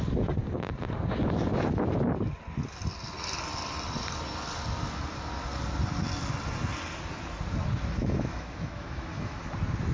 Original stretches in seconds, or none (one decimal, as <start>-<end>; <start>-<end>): 0.0-8.0; 9.4-9.9